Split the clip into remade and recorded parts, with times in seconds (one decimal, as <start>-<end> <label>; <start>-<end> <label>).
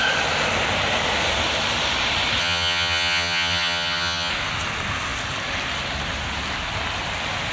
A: 0.0-2.4 recorded; 2.4-4.3 remade; 4.3-7.5 recorded